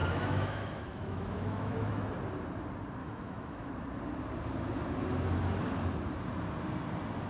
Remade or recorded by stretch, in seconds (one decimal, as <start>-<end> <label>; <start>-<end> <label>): 0.0-2.1 remade; 2.1-3.0 recorded; 3.0-3.7 remade; 3.7-7.3 recorded